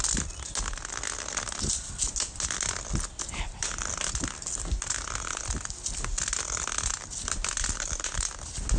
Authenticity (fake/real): real